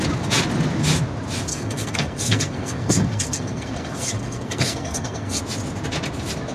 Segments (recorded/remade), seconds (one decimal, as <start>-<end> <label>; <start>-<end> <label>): 0.0-1.5 recorded; 1.5-5.4 remade; 5.4-6.5 recorded